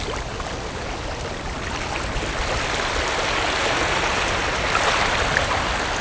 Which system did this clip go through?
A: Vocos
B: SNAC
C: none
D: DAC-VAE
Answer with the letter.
C